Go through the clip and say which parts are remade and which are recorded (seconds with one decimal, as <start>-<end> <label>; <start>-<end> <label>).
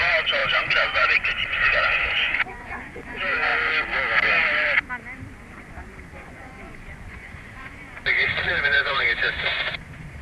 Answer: 0.0-3.5 remade; 3.5-5.6 recorded; 5.6-10.2 remade